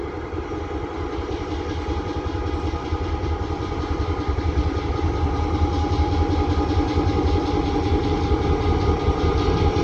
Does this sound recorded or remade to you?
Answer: remade